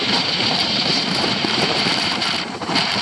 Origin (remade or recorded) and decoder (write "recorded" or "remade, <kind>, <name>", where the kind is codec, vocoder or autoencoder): remade, vocoder, BigVGAN v2